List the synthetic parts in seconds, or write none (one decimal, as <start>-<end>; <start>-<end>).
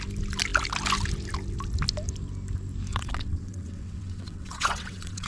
2.9-5.3